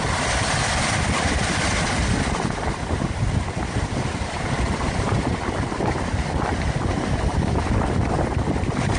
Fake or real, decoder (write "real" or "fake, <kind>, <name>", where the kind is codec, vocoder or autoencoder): real